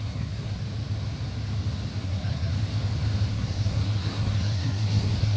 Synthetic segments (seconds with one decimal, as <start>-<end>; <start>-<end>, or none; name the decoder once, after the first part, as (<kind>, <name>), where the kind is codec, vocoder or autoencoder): 0.0-0.6 (codec, SNAC); 2.0-2.5; 3.3-5.4